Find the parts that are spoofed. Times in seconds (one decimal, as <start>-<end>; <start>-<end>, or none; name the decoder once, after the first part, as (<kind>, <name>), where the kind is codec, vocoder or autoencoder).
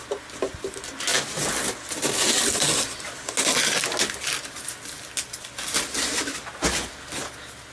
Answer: none